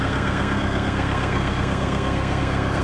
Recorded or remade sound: remade